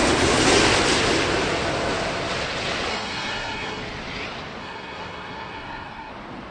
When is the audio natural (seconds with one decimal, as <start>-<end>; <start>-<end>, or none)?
0.0-2.9; 3.8-4.6; 6.1-6.5